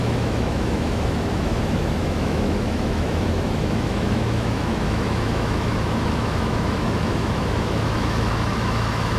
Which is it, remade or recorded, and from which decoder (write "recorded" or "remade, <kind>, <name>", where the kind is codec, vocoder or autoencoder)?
remade, autoencoder, DAC-VAE